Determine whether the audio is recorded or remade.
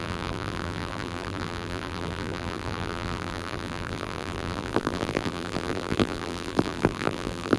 remade